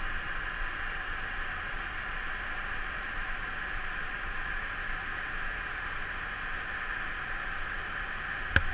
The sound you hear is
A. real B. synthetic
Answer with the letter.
A